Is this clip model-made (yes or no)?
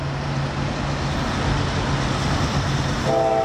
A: no